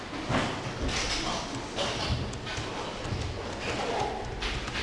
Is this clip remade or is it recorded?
recorded